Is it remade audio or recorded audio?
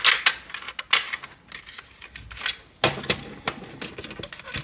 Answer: recorded